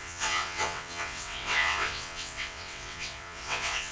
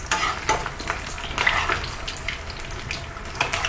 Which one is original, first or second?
second